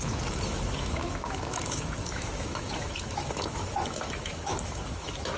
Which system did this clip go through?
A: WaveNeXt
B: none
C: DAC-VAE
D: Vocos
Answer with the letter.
C